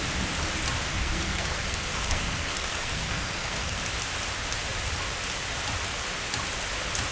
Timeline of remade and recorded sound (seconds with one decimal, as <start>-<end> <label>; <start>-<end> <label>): 0.0-0.9 recorded; 0.9-3.8 remade; 3.8-7.1 recorded